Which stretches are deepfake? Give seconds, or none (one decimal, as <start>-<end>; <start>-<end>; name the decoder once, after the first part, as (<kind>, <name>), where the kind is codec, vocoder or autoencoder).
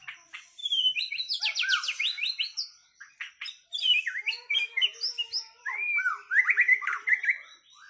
0.6-2.4 (vocoder, BigVGAN v2)